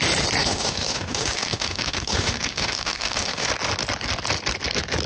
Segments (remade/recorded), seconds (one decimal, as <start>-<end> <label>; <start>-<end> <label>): 0.0-0.4 recorded; 0.4-3.5 remade; 3.5-5.1 recorded